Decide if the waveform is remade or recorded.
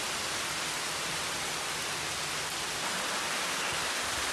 recorded